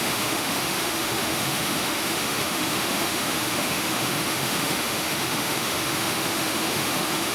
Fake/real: fake